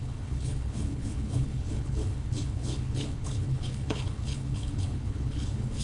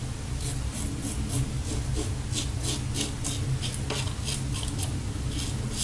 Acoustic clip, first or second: second